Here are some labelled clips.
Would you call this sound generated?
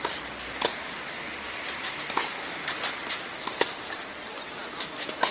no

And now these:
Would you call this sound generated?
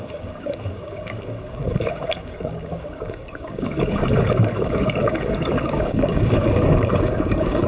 yes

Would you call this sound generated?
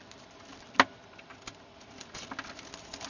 no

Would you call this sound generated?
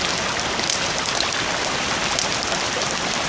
no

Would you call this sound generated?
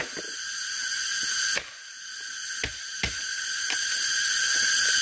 no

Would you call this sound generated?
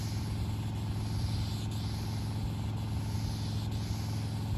no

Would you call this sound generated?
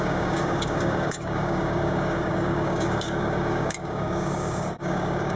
yes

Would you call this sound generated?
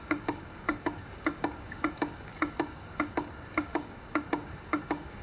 yes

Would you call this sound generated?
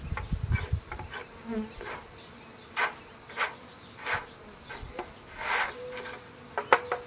no